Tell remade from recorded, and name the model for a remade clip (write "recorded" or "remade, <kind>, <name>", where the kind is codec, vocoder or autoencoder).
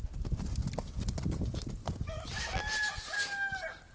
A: recorded